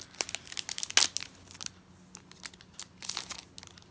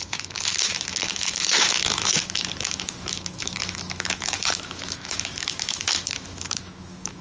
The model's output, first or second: second